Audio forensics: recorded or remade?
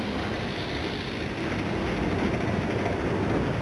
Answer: recorded